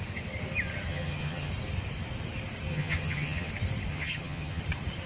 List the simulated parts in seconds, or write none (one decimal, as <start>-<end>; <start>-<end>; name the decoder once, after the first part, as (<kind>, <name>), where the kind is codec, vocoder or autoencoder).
0.9-1.5 (vocoder, HiFi-GAN); 2.7-3.5; 3.9-4.6

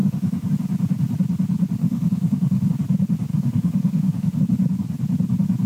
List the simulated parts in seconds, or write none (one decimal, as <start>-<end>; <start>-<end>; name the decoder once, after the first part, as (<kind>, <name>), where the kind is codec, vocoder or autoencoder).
0.0-0.5 (autoencoder, DAC-VAE); 1.8-2.7; 3.3-4.4